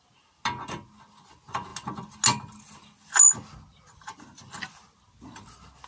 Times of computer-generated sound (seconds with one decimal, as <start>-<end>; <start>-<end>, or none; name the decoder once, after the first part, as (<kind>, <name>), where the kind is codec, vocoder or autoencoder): none